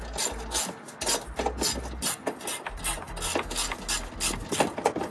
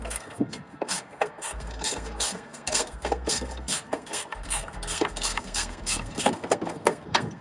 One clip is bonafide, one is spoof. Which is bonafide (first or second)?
first